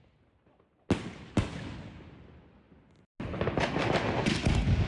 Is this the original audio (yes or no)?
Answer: yes